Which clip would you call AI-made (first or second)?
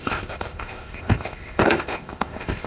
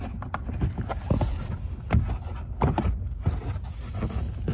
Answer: first